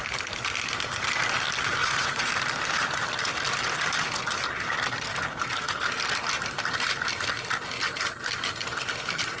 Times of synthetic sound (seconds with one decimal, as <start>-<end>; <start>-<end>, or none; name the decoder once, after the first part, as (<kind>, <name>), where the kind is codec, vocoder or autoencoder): 1.8-2.3 (vocoder, Vocos)